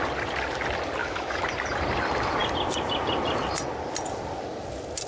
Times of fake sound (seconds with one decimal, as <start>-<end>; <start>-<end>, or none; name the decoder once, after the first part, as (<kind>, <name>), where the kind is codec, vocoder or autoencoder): 1.0-1.5 (autoencoder, DAC-VAE)